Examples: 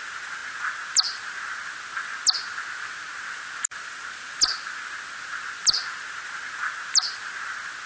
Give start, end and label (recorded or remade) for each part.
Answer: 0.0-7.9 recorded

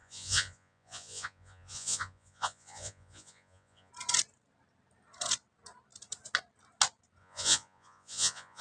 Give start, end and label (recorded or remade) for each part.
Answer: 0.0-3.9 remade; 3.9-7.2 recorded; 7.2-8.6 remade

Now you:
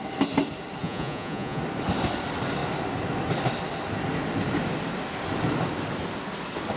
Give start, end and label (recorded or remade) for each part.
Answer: 0.0-0.8 recorded; 0.8-1.6 remade; 1.6-6.8 recorded

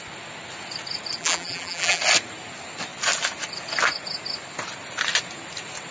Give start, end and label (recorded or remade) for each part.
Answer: 0.0-1.2 recorded; 1.2-2.0 remade; 2.0-5.9 recorded

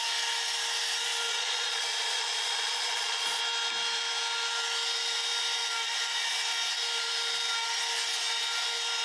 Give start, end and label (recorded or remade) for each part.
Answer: 0.0-1.3 recorded; 1.3-3.4 remade; 3.4-9.0 recorded